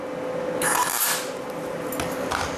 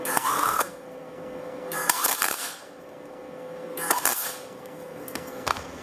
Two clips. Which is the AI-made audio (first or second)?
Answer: second